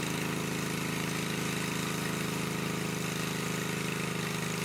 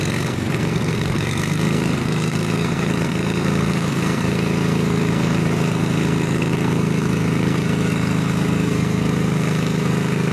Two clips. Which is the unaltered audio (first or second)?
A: first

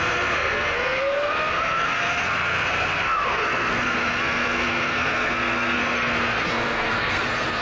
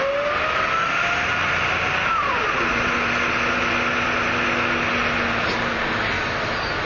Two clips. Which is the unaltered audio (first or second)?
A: second